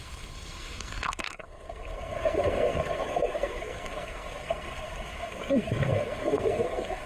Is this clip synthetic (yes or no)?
yes